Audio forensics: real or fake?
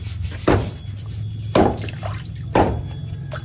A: real